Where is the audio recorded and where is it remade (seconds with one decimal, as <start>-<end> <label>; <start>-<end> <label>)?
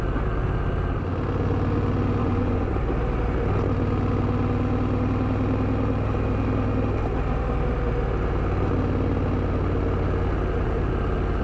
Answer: 0.0-2.2 recorded; 2.2-2.7 remade; 2.7-11.4 recorded